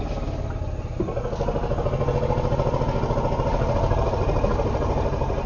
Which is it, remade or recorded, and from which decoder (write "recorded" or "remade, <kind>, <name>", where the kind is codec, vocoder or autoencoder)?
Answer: recorded